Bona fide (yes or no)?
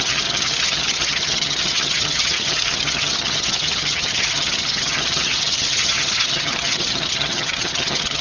no